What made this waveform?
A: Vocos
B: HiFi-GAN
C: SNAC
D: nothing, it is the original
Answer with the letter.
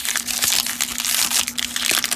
D